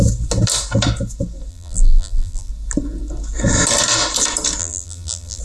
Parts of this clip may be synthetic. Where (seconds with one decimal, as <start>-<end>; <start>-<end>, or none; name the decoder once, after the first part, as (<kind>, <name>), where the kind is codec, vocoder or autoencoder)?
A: 1.5-2.5 (vocoder, BigVGAN v2); 4.6-5.4